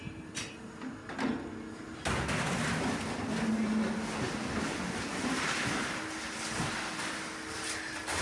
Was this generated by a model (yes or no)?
no